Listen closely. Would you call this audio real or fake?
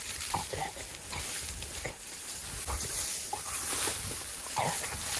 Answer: real